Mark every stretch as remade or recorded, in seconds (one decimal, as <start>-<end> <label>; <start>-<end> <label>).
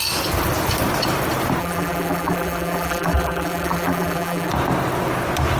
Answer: 0.0-1.6 recorded; 1.6-4.5 remade; 4.5-5.6 recorded